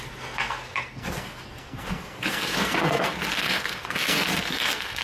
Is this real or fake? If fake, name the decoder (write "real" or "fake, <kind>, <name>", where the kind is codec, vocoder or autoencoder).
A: fake, codec, SNAC